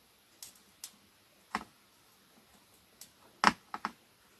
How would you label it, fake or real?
real